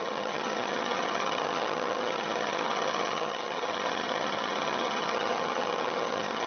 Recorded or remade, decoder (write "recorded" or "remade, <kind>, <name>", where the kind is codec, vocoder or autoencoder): remade, vocoder, HiFi-GAN